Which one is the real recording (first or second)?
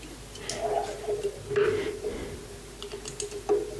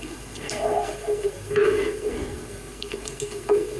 first